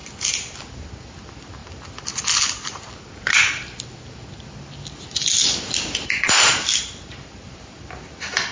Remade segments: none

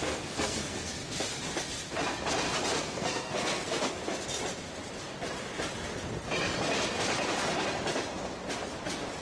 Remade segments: 0.0-1.0 (codec, SNAC); 2.8-4.0

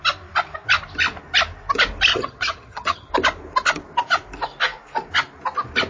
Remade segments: 2.1-3.1 (vocoder, HiFi-GAN)

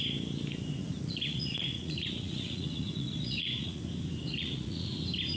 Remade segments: 0.8-3.8 (vocoder, Vocos); 4.2-4.9

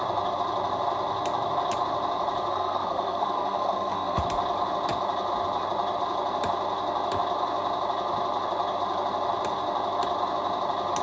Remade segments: 2.5-4.2 (codec, SNAC)

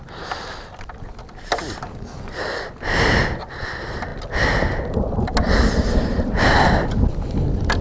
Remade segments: none

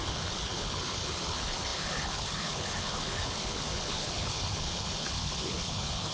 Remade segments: 0.0-6.1 (codec, HILCodec)

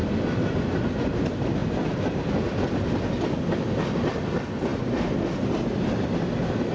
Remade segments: none